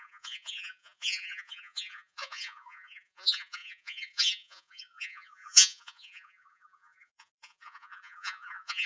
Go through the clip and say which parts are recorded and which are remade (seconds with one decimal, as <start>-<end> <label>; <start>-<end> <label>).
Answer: 0.0-8.9 remade